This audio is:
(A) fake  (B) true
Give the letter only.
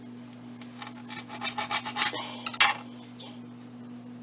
B